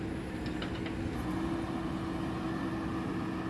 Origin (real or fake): real